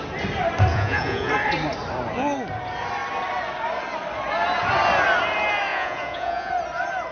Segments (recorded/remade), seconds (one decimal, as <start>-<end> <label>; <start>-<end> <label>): 0.0-0.7 recorded; 0.7-1.3 remade; 1.3-5.7 recorded; 5.7-6.5 remade; 6.5-7.1 recorded